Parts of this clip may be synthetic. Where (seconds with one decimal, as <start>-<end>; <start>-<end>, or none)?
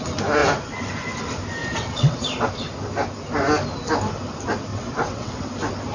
1.6-2.5; 4.7-5.5